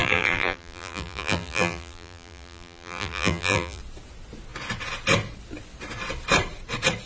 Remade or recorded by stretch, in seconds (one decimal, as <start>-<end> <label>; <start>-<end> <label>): 0.0-3.8 remade; 3.8-7.1 recorded